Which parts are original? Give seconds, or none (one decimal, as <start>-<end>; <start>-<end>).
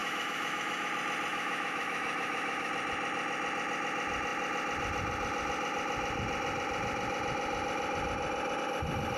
0.9-1.3; 2.7-9.2